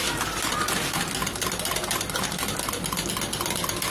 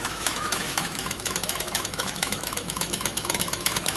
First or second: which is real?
first